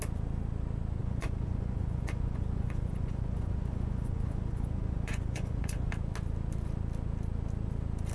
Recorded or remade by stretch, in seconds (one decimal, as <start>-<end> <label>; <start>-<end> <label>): 0.0-1.0 recorded; 1.0-5.9 remade; 5.9-8.1 recorded